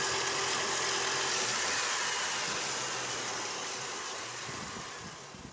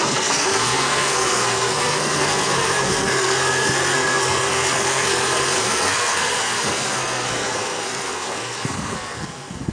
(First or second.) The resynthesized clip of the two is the second